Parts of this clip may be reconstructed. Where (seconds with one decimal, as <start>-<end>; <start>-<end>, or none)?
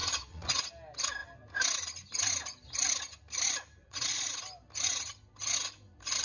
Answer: 0.0-0.7; 3.8-4.4